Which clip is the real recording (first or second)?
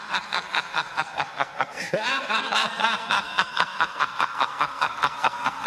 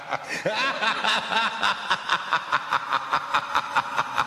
second